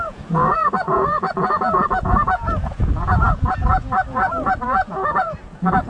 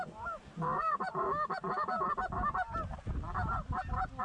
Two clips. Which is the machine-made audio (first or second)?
first